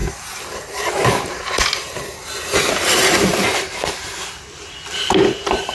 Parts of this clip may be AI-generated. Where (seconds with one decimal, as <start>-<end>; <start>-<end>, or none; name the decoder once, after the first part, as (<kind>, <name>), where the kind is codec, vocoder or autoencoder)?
0.0-3.3 (vocoder, BigVGAN v2)